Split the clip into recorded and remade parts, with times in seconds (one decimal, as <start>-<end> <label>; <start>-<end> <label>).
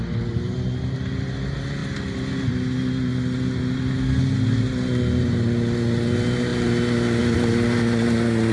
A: 0.0-8.5 recorded